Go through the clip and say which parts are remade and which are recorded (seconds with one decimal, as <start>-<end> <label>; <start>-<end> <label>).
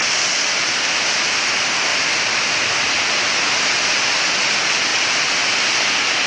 0.0-6.3 recorded